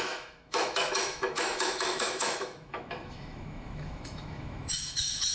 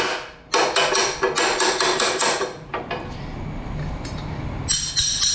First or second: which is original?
second